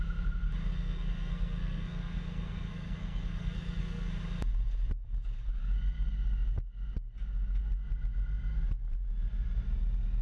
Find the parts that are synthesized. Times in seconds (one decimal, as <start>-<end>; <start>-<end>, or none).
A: 0.7-4.1